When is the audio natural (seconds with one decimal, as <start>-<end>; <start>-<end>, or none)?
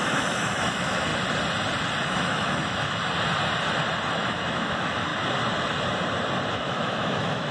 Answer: 1.1-2.1; 3.0-4.1; 5.1-6.5